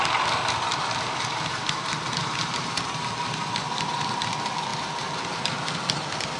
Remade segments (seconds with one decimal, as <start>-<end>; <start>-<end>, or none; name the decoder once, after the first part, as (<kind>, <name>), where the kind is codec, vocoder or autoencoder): none